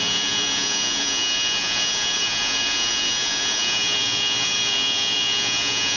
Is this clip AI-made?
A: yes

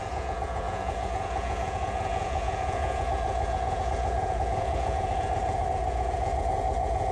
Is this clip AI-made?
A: yes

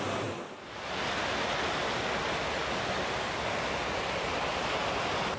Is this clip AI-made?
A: no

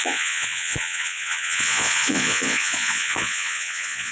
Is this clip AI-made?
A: yes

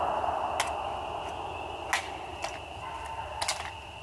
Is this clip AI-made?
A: no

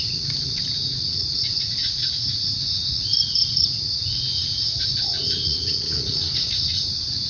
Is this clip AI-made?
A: yes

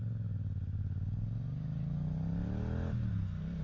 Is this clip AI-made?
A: no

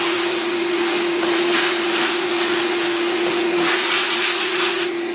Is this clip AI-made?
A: yes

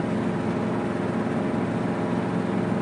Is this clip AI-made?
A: no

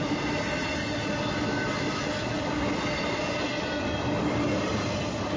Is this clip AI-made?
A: no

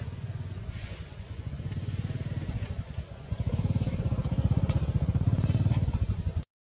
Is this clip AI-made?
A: yes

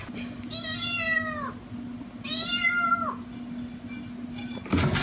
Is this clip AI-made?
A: no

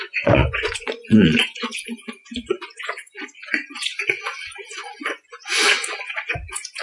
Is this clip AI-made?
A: yes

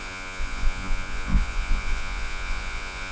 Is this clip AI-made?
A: yes